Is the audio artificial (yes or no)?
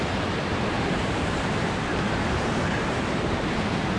yes